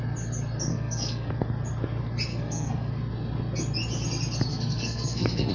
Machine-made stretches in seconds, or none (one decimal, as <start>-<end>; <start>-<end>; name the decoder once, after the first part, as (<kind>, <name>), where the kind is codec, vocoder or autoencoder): 0.7-1.3 (codec, SNAC); 2.3-2.9; 4.5-5.5